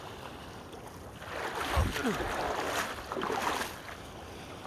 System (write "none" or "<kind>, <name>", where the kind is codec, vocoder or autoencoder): none